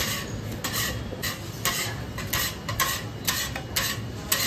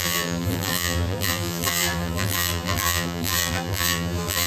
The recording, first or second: first